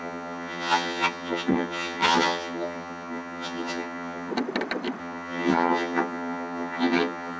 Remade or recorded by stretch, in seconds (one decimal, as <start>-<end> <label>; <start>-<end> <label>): 0.0-4.3 remade; 4.3-5.0 recorded; 5.0-7.4 remade